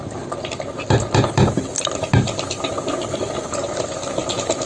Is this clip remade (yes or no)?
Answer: no